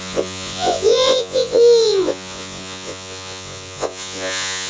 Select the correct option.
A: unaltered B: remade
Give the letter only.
B